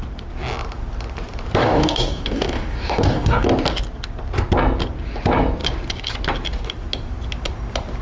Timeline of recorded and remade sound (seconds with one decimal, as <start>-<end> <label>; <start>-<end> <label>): 0.0-1.6 recorded; 1.6-3.5 remade; 3.5-8.0 recorded